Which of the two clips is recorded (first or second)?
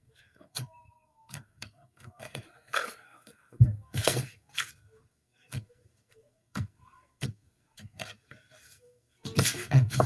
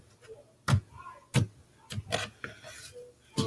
second